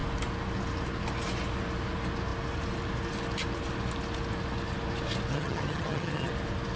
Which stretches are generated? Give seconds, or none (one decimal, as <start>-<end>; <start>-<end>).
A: 5.3-6.3